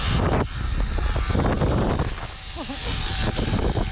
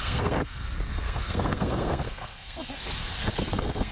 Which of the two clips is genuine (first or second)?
first